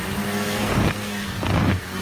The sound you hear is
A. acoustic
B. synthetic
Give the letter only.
B